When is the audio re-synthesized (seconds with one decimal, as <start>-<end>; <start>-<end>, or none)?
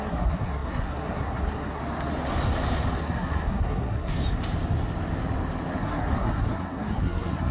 0.0-1.8; 3.0-4.1; 5.8-7.5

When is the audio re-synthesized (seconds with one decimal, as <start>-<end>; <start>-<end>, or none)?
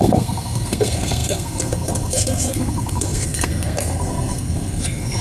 0.0-5.2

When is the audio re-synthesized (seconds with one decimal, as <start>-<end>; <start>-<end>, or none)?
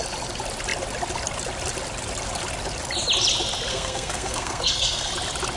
3.7-5.1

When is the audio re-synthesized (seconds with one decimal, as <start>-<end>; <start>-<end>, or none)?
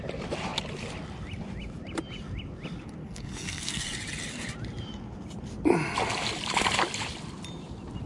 3.0-3.8